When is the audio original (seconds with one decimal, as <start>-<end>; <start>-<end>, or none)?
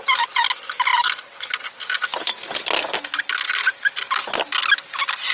0.0-5.3